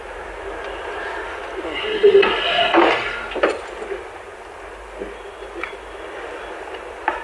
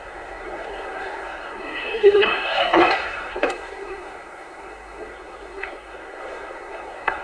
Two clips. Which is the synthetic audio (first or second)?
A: second